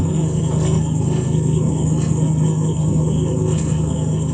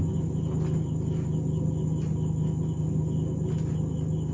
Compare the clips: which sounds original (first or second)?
second